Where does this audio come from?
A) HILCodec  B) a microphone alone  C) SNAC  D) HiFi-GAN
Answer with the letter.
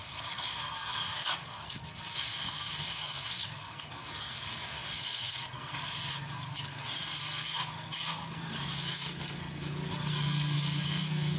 C